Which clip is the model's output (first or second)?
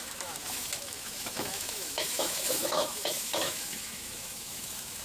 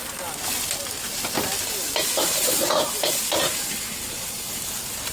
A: first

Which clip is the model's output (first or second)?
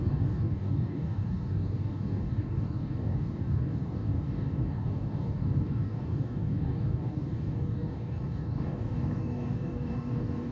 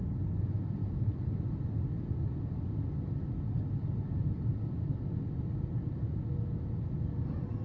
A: first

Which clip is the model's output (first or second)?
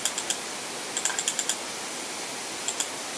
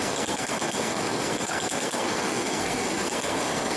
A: second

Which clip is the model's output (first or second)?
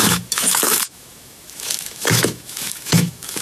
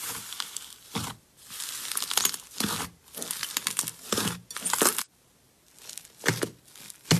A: first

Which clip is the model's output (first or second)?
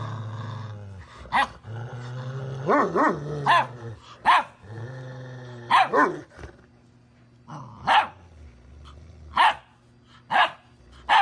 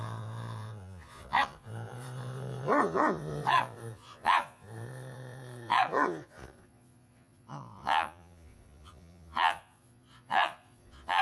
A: second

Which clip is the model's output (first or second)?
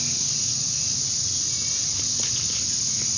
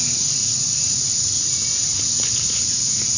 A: second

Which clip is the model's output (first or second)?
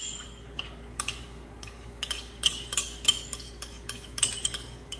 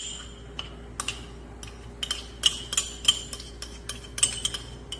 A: first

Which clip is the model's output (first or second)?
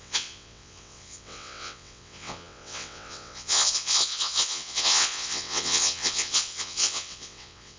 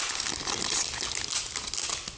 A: first